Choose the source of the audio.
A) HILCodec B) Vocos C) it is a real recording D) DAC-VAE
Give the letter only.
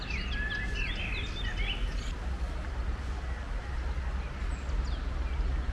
C